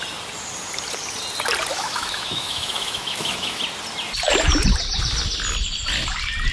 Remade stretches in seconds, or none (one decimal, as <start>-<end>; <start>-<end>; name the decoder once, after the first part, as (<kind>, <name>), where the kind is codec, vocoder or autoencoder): 1.7-3.6 (autoencoder, DAC-VAE)